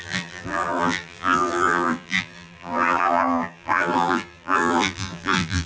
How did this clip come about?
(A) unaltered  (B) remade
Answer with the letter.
B